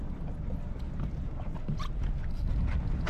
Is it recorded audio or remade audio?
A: recorded